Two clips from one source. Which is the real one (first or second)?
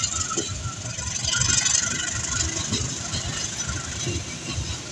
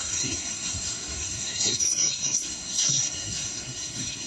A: first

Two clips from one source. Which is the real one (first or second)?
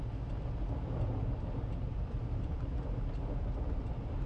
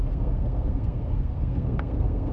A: first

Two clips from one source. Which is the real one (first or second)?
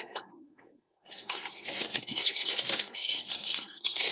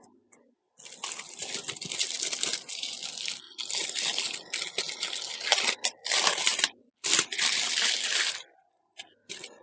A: second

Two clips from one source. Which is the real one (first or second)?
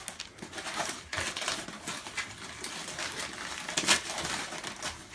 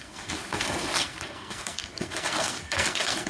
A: first